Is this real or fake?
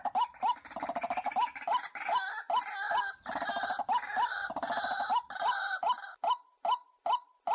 real